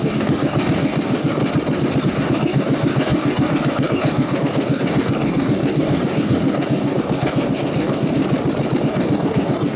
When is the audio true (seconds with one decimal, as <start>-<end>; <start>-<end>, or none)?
1.4-2.0; 8.2-8.8